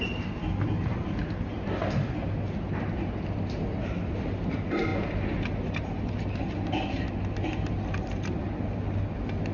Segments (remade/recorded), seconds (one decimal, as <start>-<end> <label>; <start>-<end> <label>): 0.0-9.5 recorded